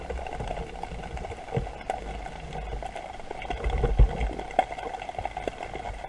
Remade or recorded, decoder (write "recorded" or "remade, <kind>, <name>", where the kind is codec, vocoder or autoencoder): recorded